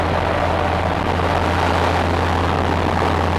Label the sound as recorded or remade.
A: recorded